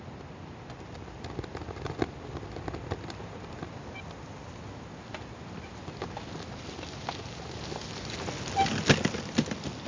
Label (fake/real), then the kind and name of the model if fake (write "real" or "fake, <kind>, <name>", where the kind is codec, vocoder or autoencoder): real